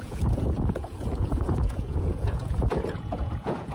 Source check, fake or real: fake